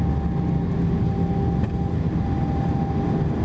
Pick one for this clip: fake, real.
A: real